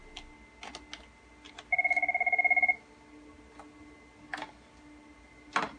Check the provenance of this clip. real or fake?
real